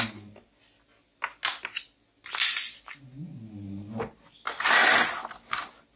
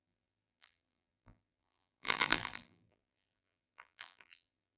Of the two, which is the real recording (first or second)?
first